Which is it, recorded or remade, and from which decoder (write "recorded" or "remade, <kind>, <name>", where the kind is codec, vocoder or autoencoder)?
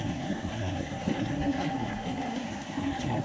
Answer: remade, codec, SNAC